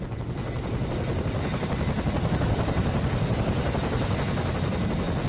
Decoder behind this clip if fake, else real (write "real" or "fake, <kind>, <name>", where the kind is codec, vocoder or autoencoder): real